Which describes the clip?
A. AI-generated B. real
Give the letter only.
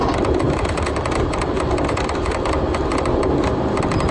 B